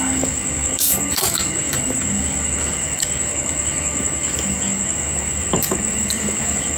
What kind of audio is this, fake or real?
fake